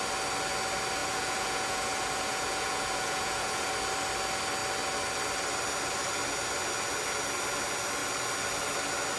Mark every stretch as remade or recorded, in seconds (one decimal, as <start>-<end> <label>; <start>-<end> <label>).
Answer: 0.0-1.0 recorded; 1.0-3.7 remade; 3.7-9.2 recorded